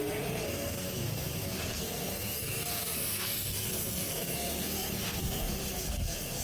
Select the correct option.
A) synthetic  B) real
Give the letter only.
A